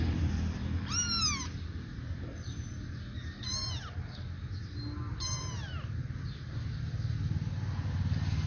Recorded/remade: recorded